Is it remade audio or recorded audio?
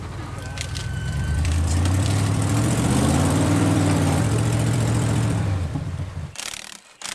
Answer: remade